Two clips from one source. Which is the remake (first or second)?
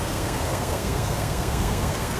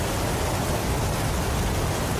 first